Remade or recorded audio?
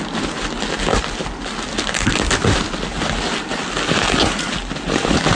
recorded